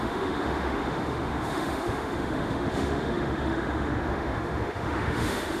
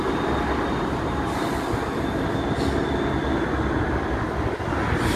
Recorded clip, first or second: second